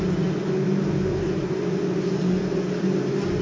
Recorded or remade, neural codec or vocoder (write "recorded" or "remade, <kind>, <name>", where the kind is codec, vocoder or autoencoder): recorded